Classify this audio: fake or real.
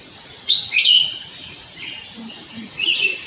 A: fake